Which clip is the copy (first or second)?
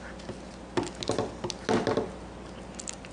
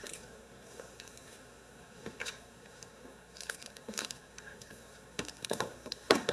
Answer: second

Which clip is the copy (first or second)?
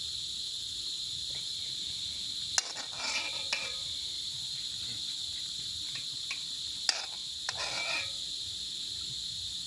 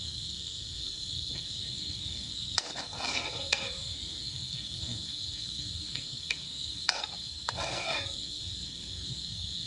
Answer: second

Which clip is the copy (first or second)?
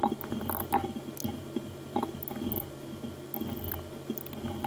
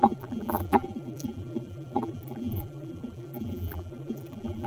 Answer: second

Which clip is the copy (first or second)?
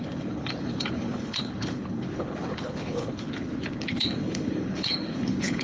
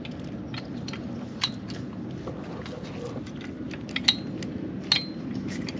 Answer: first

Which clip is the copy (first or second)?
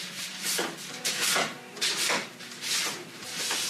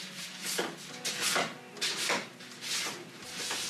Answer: first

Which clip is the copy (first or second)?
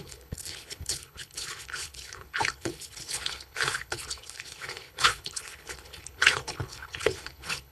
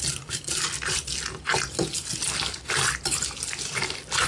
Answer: first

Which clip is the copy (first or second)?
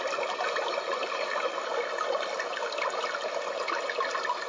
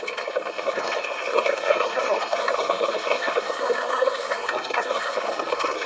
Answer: second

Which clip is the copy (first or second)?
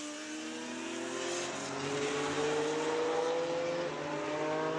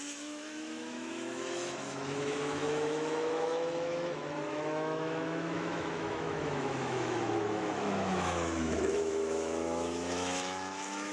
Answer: second